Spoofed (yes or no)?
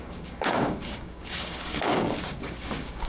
yes